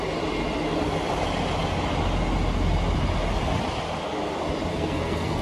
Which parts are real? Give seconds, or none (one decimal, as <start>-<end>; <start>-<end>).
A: 0.0-4.7